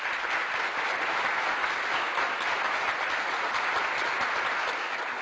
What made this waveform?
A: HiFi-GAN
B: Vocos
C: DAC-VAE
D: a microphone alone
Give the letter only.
D